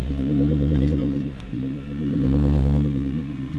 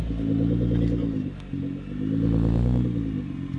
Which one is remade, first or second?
first